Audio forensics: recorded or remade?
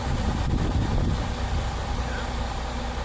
recorded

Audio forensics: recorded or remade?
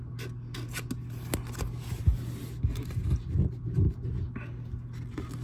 recorded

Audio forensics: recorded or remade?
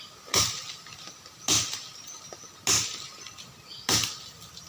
recorded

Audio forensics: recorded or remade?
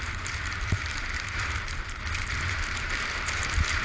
remade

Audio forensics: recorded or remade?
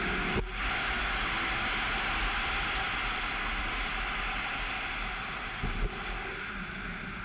recorded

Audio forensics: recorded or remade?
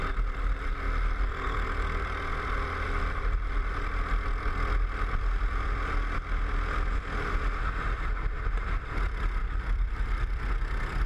remade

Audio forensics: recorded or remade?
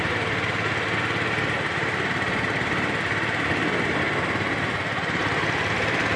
remade